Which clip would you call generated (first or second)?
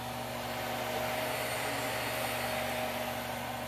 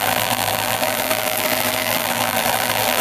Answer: second